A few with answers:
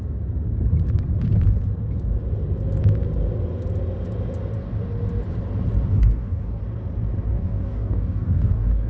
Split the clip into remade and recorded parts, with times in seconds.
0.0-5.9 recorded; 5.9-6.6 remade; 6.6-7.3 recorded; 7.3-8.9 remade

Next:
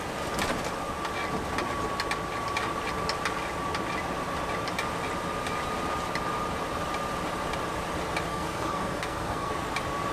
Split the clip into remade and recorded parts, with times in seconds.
0.0-8.3 recorded; 8.3-9.5 remade; 9.5-10.1 recorded

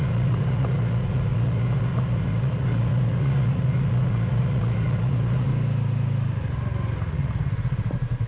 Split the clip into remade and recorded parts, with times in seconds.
0.0-5.5 remade; 5.5-7.1 recorded; 7.1-8.3 remade

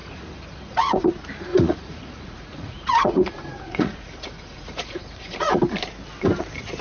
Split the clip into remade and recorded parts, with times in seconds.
0.0-1.1 remade; 1.1-1.5 recorded; 1.5-5.6 remade; 5.6-6.8 recorded

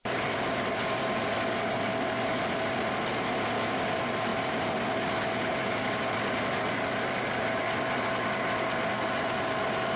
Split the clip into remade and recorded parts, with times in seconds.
0.0-10.0 recorded

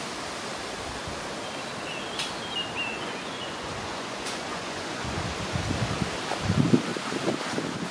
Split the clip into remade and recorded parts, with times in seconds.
0.0-2.9 recorded; 2.9-5.2 remade; 5.2-7.9 recorded